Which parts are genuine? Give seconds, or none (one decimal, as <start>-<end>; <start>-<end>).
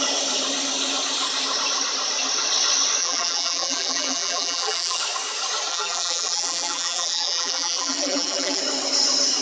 0.0-3.0; 5.0-5.7; 8.6-9.4